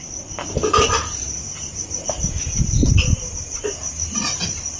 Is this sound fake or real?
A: fake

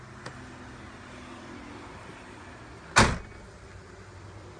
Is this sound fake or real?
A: real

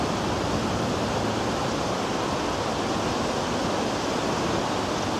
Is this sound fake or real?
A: real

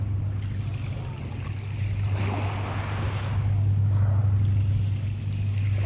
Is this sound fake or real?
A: real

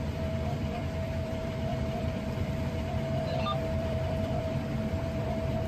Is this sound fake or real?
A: fake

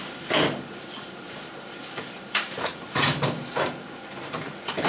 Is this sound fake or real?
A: fake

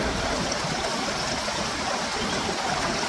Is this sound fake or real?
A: real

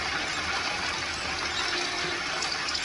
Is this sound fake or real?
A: real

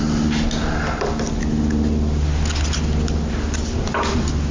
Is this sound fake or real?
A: real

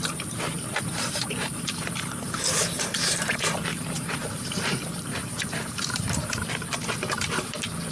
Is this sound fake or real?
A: fake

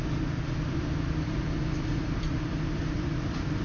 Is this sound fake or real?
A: fake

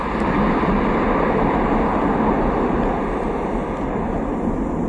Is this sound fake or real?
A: real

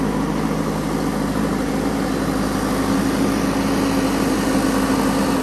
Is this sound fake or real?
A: real